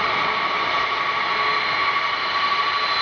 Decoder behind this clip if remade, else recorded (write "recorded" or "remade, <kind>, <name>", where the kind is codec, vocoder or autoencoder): recorded